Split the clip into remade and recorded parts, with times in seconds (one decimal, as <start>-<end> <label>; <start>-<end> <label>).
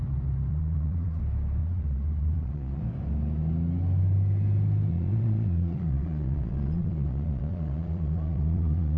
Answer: 0.0-0.5 recorded; 0.5-1.2 remade; 1.2-1.6 recorded; 1.6-2.8 remade; 2.8-4.9 recorded; 4.9-9.0 remade